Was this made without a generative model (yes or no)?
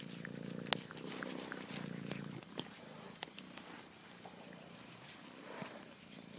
yes